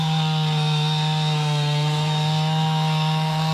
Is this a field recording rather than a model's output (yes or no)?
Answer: no